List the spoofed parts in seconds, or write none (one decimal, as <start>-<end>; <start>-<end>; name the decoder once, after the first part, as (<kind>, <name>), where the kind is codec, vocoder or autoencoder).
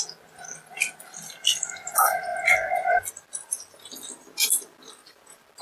none